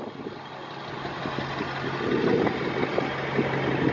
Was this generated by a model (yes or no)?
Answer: no